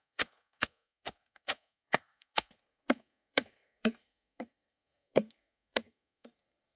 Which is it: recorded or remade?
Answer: remade